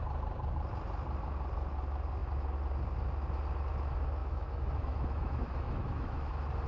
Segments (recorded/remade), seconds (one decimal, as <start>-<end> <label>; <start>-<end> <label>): 0.0-4.2 recorded; 4.2-6.3 remade; 6.3-6.7 recorded